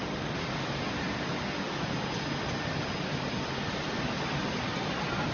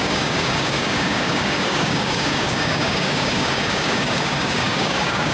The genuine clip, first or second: first